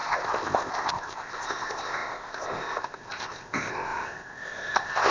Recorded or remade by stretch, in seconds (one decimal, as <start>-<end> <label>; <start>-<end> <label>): 0.0-5.1 remade